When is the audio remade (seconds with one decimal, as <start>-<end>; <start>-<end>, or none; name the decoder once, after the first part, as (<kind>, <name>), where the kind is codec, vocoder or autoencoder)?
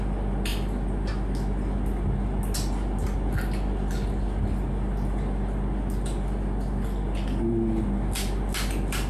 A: none